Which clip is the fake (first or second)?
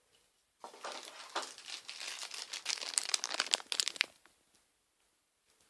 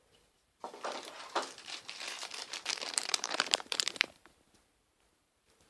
second